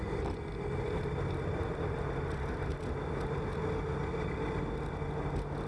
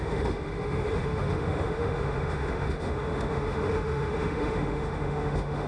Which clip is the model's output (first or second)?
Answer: second